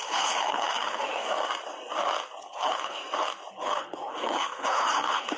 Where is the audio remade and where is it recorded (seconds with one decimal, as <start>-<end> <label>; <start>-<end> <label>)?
0.0-1.2 remade; 1.2-2.4 recorded; 2.4-3.0 remade; 3.0-3.5 recorded; 3.5-5.4 remade